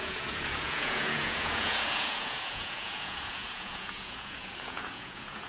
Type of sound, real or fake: fake